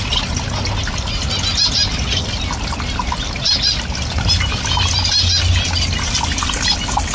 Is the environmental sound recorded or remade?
recorded